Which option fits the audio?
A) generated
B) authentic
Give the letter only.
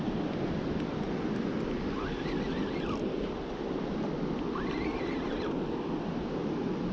B